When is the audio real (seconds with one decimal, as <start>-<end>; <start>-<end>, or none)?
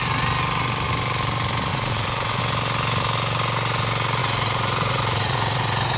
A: 0.0-1.7; 2.4-4.2